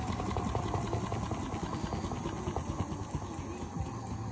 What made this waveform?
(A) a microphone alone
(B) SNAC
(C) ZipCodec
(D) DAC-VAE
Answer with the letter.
A